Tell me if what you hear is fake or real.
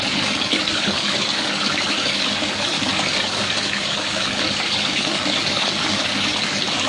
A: fake